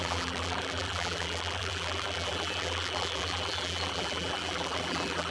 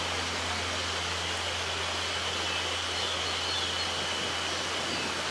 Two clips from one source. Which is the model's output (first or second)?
first